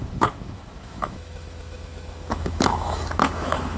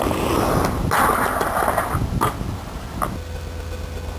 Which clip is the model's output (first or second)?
first